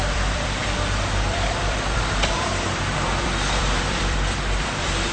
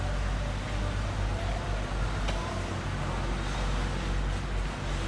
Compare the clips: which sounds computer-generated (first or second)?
first